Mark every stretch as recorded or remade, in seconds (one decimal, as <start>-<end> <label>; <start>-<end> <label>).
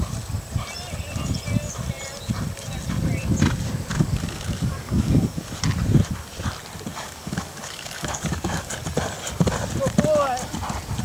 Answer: 0.0-3.9 recorded; 3.9-5.4 remade; 5.4-6.9 recorded; 6.9-8.7 remade; 8.7-11.0 recorded